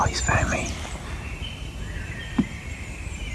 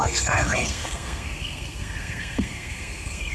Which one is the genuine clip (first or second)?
first